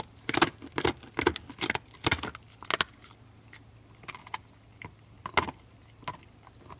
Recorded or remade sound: recorded